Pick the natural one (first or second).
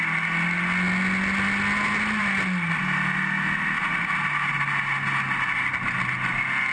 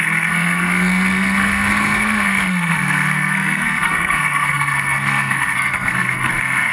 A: first